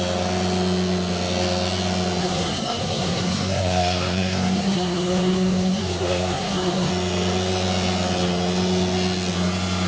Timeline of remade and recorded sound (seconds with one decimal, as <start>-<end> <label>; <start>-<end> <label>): 0.0-2.2 recorded; 2.2-6.9 remade; 6.9-9.9 recorded